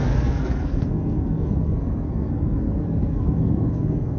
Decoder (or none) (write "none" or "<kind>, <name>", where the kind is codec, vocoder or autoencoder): codec, SNAC